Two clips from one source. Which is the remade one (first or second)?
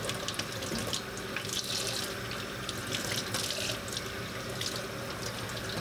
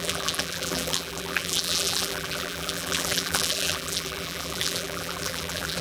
second